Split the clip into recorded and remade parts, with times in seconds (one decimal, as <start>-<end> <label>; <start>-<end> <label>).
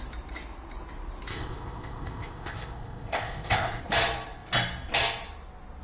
0.0-1.3 recorded; 1.3-3.8 remade; 3.8-5.8 recorded